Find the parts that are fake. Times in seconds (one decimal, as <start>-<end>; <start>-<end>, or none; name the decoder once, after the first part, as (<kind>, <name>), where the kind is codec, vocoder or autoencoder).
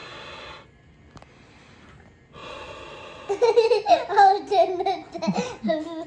none